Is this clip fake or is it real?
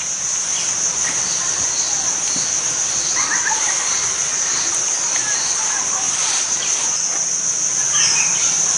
real